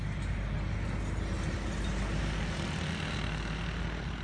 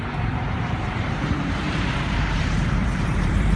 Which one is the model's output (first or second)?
second